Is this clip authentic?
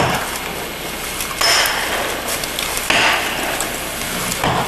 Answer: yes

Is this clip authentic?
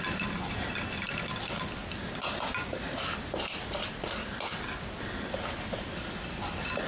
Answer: yes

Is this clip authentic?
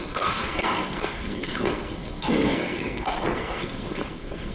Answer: no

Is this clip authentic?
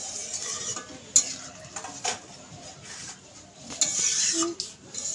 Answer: yes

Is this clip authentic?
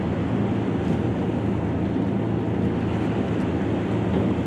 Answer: yes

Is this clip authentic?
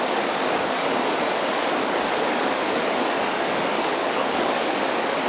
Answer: no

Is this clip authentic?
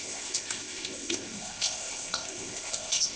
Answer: no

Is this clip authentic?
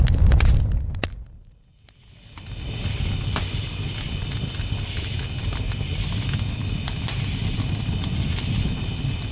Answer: yes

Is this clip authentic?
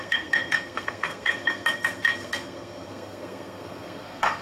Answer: no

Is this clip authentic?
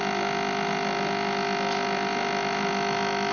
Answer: yes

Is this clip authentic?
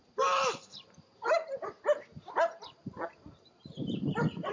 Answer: no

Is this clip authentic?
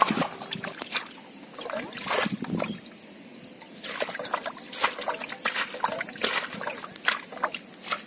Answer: yes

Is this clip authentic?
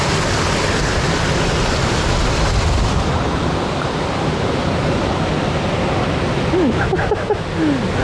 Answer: yes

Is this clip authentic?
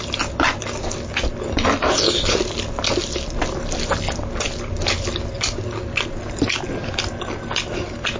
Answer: yes